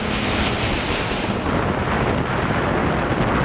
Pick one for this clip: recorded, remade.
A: recorded